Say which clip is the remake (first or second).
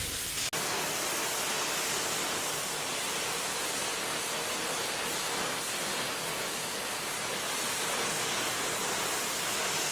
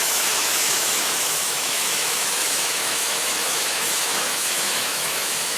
second